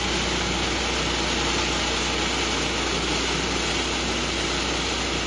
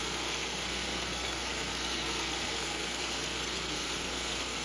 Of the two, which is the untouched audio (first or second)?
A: first